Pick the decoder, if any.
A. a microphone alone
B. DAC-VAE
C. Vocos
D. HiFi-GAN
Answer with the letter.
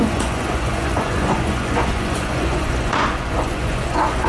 C